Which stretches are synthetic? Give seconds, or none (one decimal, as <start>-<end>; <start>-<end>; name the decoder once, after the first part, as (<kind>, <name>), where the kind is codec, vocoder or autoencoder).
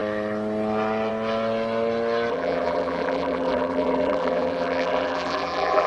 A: 2.3-5.9 (vocoder, BigVGAN v2)